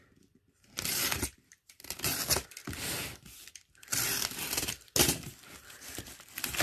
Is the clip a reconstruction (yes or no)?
no